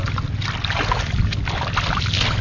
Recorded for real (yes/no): yes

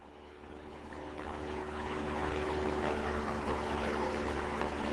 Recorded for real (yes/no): no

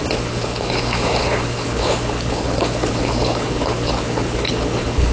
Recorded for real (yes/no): no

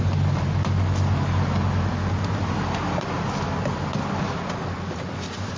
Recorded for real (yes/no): yes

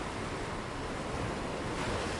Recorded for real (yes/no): yes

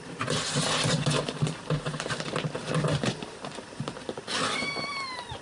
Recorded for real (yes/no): yes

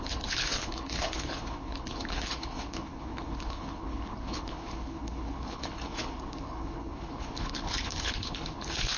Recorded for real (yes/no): no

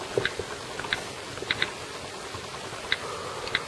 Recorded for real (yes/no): yes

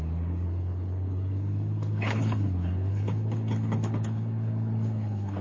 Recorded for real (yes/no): no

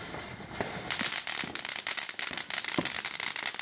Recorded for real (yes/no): yes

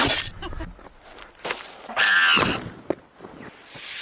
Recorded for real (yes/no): yes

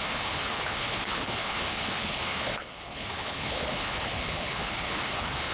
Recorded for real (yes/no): no